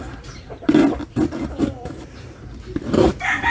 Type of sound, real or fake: fake